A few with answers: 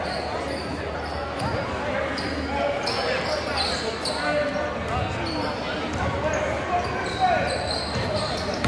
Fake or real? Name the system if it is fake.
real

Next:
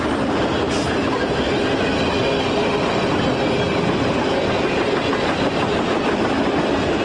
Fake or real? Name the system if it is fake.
real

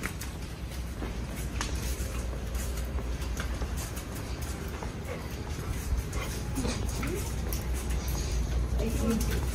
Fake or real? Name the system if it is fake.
fake, vocoder, BigVGAN v2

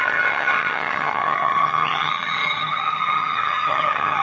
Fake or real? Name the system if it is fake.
fake, vocoder, HiFi-GAN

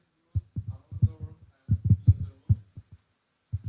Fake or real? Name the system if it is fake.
real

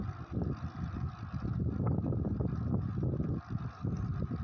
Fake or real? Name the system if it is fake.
real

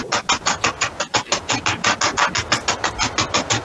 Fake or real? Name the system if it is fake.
real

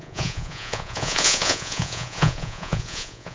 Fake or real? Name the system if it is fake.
fake, vocoder, Vocos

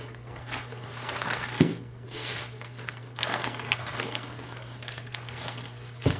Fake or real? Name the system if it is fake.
fake, codec, SNAC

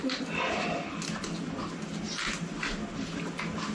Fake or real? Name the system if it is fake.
real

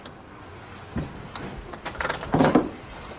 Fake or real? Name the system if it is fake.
real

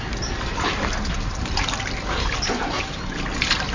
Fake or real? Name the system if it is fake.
real